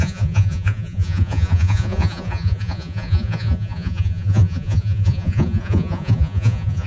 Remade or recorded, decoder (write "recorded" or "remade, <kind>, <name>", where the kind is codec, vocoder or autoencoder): remade, vocoder, Vocos